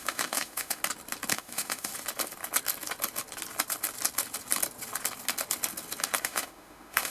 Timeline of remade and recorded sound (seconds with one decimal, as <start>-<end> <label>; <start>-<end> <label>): 0.0-0.8 remade; 0.8-1.3 recorded; 1.3-1.9 remade; 1.9-6.2 recorded; 6.2-7.1 remade